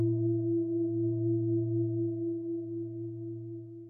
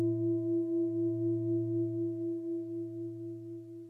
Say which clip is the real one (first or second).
second